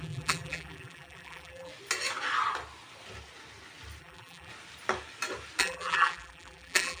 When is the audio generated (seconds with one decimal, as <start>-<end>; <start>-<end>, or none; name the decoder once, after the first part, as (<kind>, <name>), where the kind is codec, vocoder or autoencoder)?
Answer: 0.0-1.7 (vocoder, BigVGAN v2); 4.0-4.5; 5.6-7.0